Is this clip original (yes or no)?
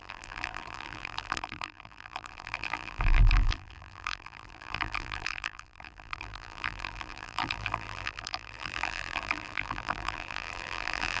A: no